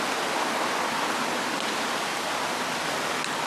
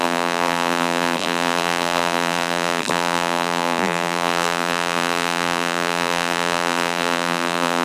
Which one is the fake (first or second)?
second